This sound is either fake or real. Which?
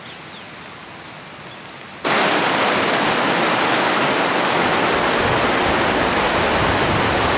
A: real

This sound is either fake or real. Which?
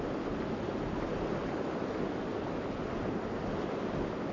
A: real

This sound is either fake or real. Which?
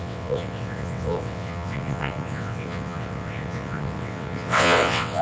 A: fake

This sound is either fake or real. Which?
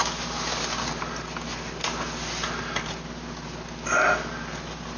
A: real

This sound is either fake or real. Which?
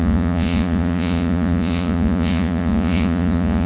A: fake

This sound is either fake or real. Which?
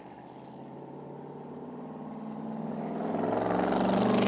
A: real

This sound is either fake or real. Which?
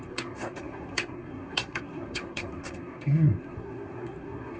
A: fake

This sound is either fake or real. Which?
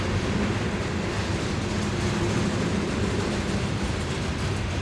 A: real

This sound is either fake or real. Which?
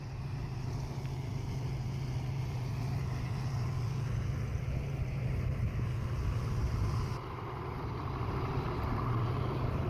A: real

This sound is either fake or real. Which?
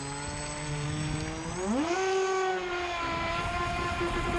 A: real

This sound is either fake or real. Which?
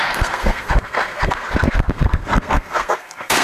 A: fake